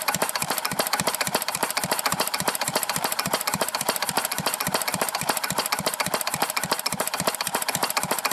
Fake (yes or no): yes